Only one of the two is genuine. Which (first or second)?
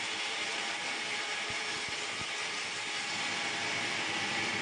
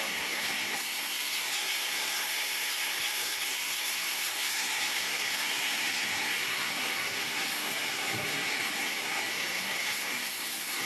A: first